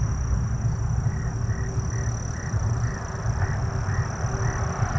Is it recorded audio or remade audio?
recorded